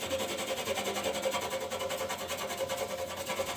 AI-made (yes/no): no